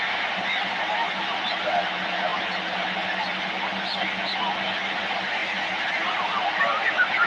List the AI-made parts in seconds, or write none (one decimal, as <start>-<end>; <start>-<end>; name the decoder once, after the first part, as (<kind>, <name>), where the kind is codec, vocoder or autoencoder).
none